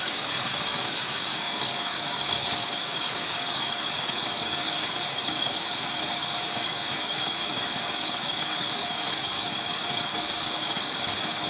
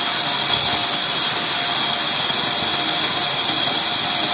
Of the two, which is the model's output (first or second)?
first